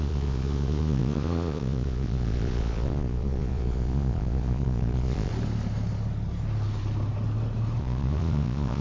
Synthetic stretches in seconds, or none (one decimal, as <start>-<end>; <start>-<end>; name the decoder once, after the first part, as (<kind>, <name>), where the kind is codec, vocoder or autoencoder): 0.0-5.3 (vocoder, Vocos); 7.8-8.8